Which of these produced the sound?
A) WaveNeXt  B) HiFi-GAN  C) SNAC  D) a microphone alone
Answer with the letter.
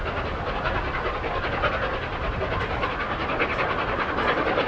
D